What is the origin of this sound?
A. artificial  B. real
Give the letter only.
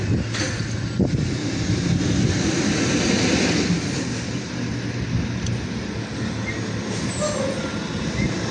B